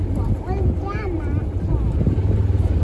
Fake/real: real